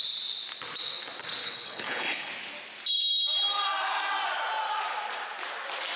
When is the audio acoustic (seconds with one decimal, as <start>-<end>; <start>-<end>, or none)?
0.0-1.4; 2.3-6.0